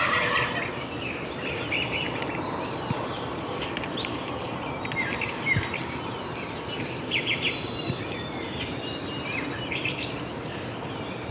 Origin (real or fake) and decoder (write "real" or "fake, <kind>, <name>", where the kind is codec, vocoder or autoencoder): fake, vocoder, BigVGAN v2